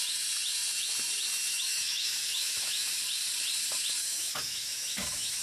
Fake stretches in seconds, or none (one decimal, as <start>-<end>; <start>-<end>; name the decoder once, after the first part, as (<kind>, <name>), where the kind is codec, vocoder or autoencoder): 1.5-3.0 (autoencoder, DAC-VAE); 4.0-5.4